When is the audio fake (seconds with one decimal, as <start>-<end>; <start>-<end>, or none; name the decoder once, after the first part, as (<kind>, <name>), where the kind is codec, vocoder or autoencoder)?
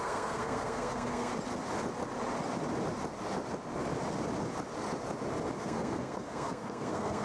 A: 0.0-1.3 (codec, SNAC); 5.6-7.2